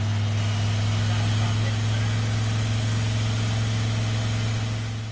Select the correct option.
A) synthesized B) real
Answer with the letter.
B